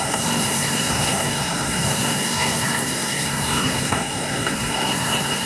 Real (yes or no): no